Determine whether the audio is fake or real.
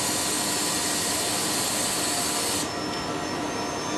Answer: real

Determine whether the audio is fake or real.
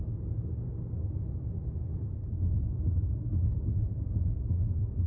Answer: real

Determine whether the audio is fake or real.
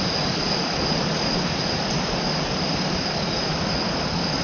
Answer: real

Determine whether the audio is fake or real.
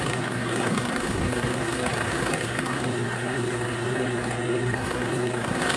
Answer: fake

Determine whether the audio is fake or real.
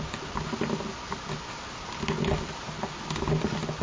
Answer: real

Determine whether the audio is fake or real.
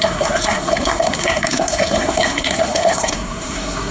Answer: fake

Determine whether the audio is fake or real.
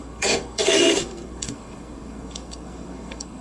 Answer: fake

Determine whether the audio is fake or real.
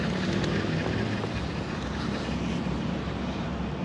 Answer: real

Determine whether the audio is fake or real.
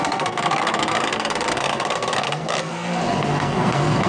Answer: fake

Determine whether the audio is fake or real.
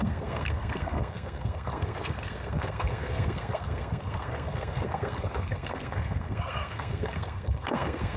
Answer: fake